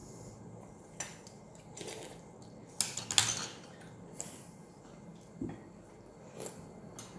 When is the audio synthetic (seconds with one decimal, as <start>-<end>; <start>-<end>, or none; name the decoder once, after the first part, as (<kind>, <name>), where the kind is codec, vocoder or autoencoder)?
none